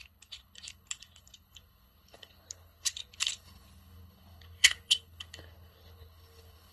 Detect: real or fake fake